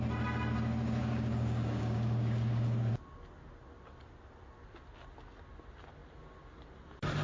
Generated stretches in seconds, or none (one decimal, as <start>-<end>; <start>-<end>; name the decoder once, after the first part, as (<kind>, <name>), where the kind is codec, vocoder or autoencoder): 1.0-2.9 (codec, DAC)